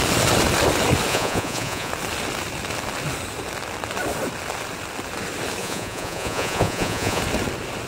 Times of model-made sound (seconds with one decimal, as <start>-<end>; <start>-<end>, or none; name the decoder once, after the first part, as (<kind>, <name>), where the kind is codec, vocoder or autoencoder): 1.1-1.9 (vocoder, Vocos); 5.6-7.2